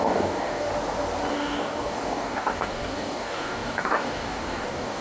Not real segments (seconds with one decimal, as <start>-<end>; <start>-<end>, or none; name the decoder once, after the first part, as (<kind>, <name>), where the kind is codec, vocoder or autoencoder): 0.0-0.7 (codec, DAC); 1.3-5.0